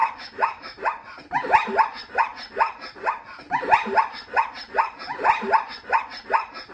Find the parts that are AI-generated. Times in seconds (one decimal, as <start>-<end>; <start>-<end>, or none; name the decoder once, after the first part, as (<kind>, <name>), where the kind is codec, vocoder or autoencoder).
0.0-0.8 (autoencoder, DAC-VAE)